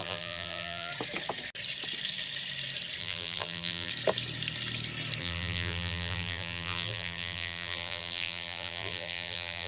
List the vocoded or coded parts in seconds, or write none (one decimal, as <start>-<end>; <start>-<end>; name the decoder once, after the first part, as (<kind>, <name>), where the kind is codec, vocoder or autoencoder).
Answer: 0.0-0.9 (vocoder, BigVGAN v2); 3.0-3.9; 5.2-9.7